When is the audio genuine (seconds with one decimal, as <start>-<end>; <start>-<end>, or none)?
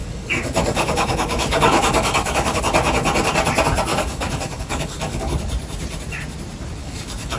2.6-3.9; 5.3-6.8